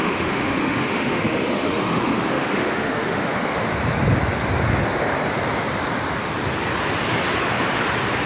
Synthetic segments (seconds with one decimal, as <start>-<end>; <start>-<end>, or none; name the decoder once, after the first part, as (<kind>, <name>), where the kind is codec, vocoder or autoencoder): 0.0-3.7 (autoencoder, DAC-VAE)